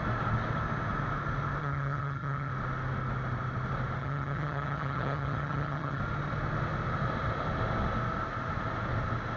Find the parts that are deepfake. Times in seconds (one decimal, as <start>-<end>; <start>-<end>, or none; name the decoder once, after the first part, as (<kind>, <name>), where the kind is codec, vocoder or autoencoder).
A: 1.6-2.5 (vocoder, HiFi-GAN); 4.0-6.0